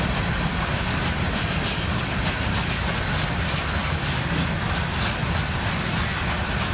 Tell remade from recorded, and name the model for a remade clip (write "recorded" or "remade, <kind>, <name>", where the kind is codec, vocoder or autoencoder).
recorded